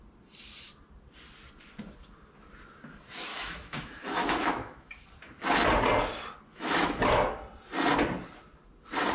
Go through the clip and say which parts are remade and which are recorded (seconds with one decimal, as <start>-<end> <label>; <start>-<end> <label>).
0.0-3.3 recorded; 3.3-4.9 remade; 4.9-6.5 recorded; 6.5-7.1 remade; 7.1-9.1 recorded